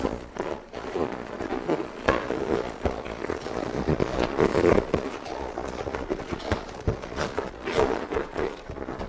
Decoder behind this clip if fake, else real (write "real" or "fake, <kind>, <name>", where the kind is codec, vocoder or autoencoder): fake, vocoder, Vocos